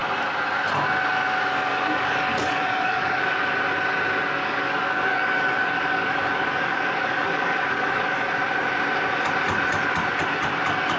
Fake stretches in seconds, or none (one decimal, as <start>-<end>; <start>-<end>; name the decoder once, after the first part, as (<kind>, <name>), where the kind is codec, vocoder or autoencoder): 1.7-3.2 (codec, DAC); 4.4-8.3